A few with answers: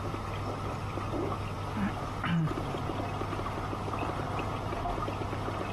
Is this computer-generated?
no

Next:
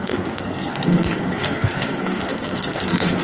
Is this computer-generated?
yes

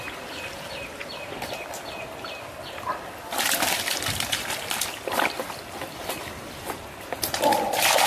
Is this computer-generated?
no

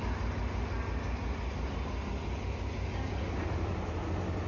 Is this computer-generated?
no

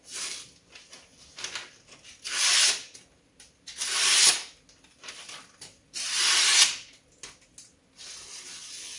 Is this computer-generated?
no